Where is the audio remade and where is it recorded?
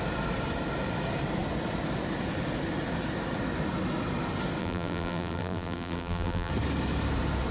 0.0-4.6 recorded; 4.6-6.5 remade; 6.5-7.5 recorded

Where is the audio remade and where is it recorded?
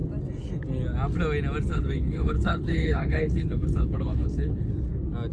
0.0-1.7 recorded; 1.7-4.7 remade; 4.7-5.3 recorded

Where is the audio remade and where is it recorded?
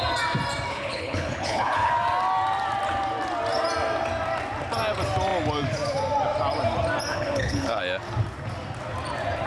0.0-0.7 recorded; 0.7-1.9 remade; 1.9-7.1 recorded; 7.1-7.8 remade; 7.8-9.5 recorded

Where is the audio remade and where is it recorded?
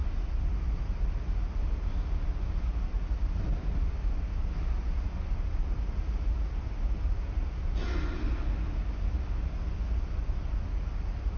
0.0-11.4 recorded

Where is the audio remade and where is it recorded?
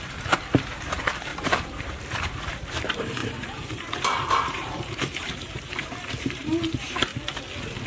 0.0-7.1 remade; 7.1-7.9 recorded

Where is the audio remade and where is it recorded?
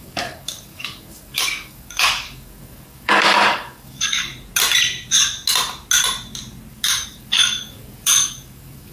0.0-4.3 remade; 4.3-6.7 recorded; 6.7-8.9 remade